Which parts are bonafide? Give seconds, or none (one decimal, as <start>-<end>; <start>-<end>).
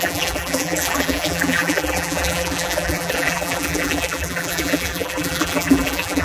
none